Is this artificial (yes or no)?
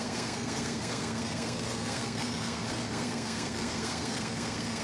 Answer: yes